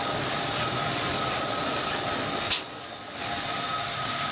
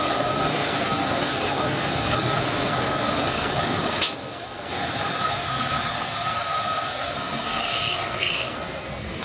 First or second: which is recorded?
first